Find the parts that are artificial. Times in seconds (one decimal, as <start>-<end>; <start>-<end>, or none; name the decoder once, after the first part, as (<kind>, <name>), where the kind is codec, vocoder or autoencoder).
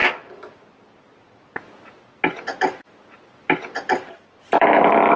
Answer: 2.4-5.2 (vocoder, BigVGAN v2)